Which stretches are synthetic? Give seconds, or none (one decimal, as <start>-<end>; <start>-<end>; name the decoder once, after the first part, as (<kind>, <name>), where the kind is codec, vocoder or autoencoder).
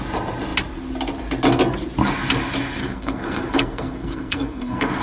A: 2.8-5.0 (codec, SNAC)